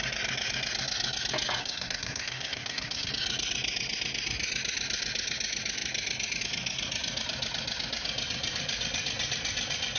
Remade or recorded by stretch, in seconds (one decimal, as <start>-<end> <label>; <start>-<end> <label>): 0.0-1.6 recorded; 1.6-3.1 remade; 3.1-10.0 recorded